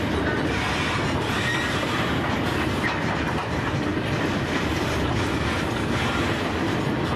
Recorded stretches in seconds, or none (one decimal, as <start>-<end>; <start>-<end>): 0.0-3.9; 5.5-7.2